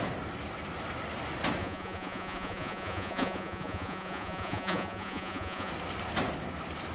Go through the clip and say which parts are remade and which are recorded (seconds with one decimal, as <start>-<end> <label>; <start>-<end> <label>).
0.0-1.6 recorded; 1.6-5.7 remade; 5.7-6.9 recorded